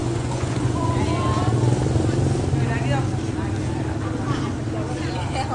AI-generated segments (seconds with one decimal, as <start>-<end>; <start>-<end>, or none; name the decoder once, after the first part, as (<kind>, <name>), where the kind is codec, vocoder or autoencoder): 0.0-1.0 (vocoder, Vocos)